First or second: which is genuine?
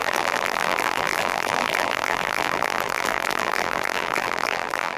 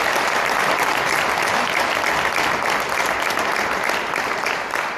second